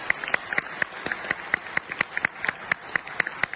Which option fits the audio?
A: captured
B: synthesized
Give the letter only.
A